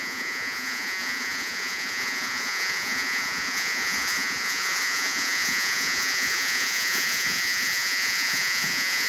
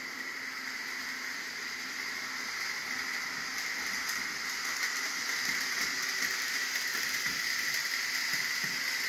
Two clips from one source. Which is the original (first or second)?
second